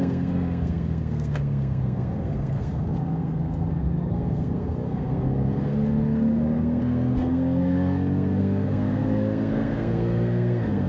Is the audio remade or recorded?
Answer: remade